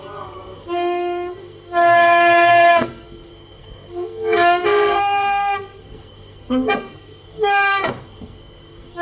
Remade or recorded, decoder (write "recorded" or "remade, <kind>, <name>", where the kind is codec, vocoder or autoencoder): remade, codec, SNAC